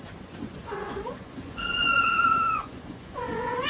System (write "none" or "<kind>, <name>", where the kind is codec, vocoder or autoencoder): vocoder, Vocos